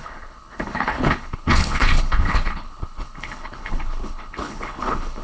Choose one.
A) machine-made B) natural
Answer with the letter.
A